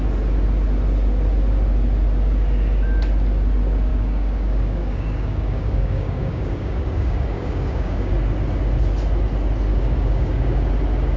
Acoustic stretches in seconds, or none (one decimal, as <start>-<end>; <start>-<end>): 0.0-3.9; 8.1-9.7; 10.7-11.2